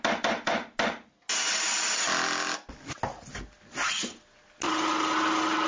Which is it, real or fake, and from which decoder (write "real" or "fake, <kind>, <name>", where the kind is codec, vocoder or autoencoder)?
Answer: real